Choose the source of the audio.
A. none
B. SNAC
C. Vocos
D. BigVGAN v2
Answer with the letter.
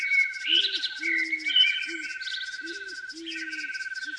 A